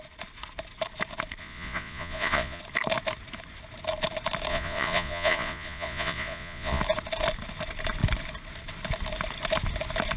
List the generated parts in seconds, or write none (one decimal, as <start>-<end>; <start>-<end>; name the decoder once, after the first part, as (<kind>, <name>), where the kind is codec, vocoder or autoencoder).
1.4-2.6 (vocoder, Vocos); 4.5-6.8